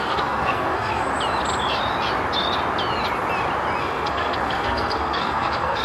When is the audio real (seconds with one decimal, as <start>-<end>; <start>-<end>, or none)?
1.1-3.8